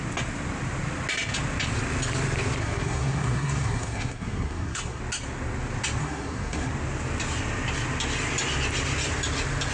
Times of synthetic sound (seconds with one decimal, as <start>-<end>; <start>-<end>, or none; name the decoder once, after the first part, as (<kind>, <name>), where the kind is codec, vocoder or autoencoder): 2.6-5.0 (codec, SNAC); 6.0-6.7

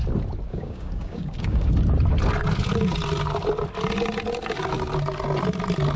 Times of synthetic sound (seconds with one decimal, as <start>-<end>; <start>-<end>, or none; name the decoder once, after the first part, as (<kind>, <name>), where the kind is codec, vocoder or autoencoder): 0.5-1.7 (codec, DAC)

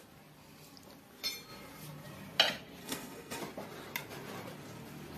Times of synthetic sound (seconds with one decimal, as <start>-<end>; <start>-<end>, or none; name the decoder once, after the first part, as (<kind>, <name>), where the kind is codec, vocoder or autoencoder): 2.8-3.4 (codec, SNAC)

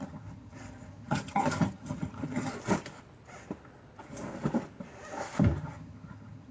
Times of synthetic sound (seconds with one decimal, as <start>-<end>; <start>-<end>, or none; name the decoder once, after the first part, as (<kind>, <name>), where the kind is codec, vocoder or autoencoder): 0.0-2.5 (vocoder, HiFi-GAN); 5.6-6.5

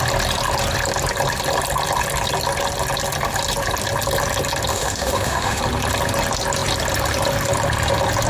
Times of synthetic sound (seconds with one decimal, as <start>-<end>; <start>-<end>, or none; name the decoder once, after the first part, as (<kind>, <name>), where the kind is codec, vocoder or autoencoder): 4.7-5.6 (autoencoder, DAC-VAE)

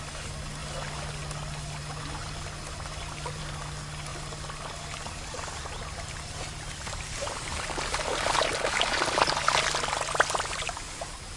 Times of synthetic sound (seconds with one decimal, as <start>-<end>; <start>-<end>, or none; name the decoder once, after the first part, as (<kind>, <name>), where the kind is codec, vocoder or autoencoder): none